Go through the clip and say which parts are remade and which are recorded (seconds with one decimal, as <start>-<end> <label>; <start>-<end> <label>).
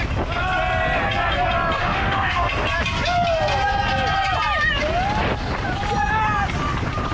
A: 0.0-1.8 recorded; 1.8-2.5 remade; 2.5-7.1 recorded